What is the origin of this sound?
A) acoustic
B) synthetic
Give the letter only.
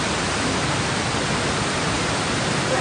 A